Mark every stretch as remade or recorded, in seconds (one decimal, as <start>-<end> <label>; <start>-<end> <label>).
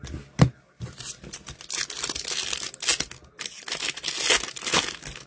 0.0-5.3 recorded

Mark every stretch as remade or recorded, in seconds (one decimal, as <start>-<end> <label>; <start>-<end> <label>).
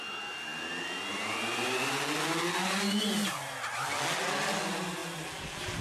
0.0-5.8 recorded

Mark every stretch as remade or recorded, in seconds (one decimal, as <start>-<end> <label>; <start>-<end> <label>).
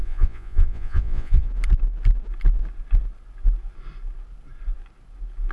0.0-1.5 remade; 1.5-5.5 recorded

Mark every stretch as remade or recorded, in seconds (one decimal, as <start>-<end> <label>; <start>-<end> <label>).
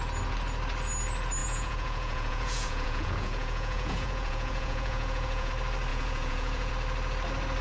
0.0-1.4 recorded; 1.4-5.5 remade; 5.5-5.9 recorded; 5.9-6.7 remade; 6.7-7.6 recorded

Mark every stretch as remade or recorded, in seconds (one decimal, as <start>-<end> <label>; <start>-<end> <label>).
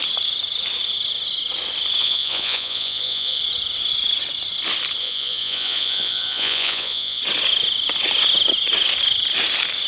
0.0-2.0 recorded; 2.0-3.4 remade; 3.4-5.0 recorded; 5.0-7.2 remade; 7.2-9.9 recorded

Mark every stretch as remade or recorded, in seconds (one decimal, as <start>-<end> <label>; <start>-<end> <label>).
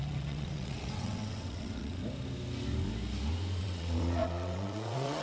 0.0-2.0 remade; 2.0-3.6 recorded; 3.6-5.2 remade